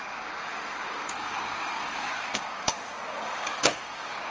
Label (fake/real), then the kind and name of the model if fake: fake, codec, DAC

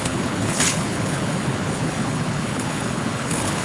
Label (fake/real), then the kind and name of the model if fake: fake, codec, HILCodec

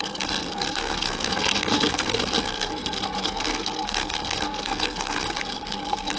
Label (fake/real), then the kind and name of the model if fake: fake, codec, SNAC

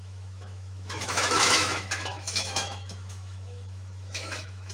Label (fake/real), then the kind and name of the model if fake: fake, autoencoder, DAC-VAE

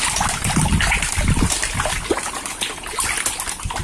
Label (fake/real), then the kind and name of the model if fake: real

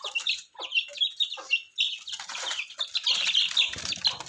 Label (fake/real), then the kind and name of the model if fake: real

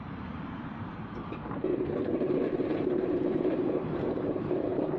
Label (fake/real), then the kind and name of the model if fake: fake, vocoder, BigVGAN v2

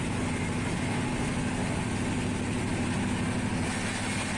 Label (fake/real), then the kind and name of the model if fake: real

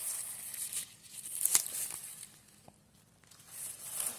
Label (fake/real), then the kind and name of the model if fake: real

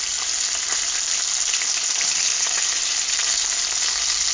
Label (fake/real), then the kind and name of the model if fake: real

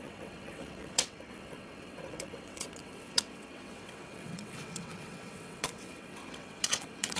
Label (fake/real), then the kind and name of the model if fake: fake, vocoder, WaveNeXt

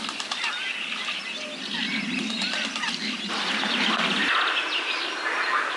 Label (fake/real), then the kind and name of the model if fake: real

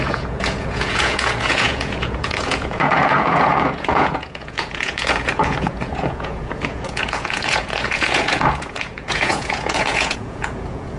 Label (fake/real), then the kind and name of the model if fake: fake, vocoder, Vocos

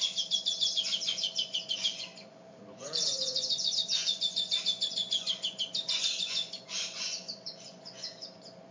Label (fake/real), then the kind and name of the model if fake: fake, vocoder, Vocos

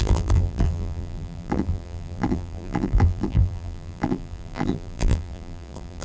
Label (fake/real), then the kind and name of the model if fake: fake, vocoder, BigVGAN v2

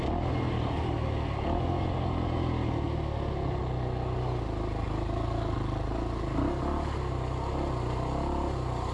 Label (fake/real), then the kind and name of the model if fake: real